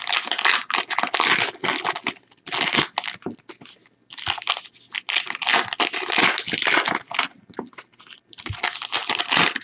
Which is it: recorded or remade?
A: recorded